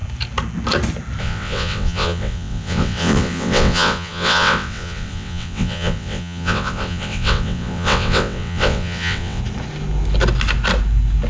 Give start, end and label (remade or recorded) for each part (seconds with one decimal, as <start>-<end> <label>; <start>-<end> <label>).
0.0-1.2 recorded; 1.2-9.4 remade; 9.4-11.3 recorded

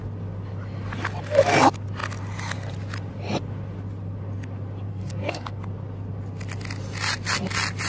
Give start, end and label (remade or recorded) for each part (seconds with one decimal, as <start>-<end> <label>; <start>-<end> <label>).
0.0-4.9 recorded; 4.9-5.6 remade; 5.6-7.9 recorded

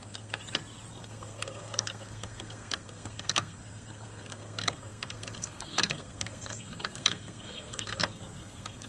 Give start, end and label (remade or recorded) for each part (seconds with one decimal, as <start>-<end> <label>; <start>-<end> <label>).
0.0-0.4 remade; 0.4-0.9 recorded; 0.9-8.9 remade

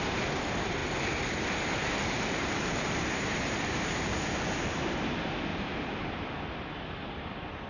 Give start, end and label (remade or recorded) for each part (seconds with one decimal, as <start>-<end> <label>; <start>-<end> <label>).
0.0-1.8 recorded; 1.8-4.3 remade; 4.3-5.5 recorded; 5.5-6.1 remade; 6.1-7.7 recorded

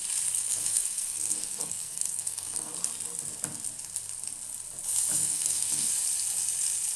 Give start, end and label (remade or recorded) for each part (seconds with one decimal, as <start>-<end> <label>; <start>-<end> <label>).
0.0-0.4 recorded; 0.4-2.7 remade; 2.7-5.2 recorded; 5.2-5.9 remade; 5.9-7.0 recorded

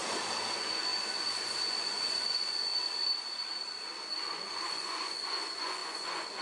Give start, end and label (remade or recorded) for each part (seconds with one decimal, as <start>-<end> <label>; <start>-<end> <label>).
0.0-0.5 recorded; 0.5-2.7 remade; 2.7-4.1 recorded; 4.1-6.4 remade